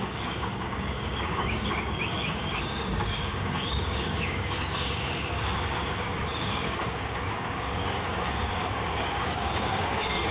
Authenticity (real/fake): fake